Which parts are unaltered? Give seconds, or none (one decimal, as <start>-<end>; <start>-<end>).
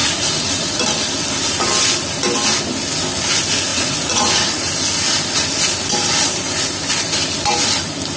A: 0.8-3.7; 4.7-8.2